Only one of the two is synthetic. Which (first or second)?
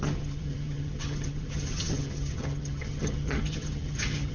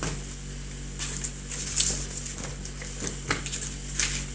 first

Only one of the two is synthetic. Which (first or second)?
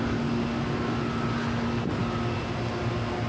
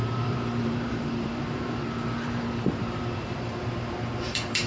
second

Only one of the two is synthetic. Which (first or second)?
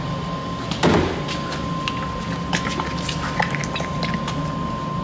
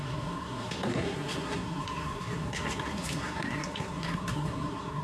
second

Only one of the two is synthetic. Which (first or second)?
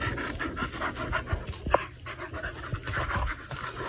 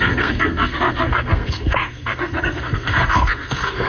second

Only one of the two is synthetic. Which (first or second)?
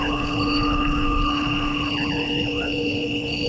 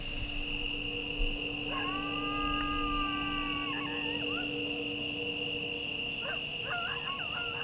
first